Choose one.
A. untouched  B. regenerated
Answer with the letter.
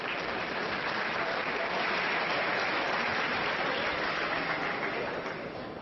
B